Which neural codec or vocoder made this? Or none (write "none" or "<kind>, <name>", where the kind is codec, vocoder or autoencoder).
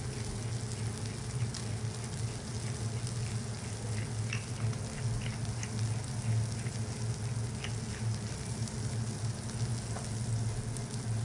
none